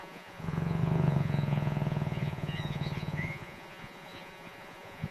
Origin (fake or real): fake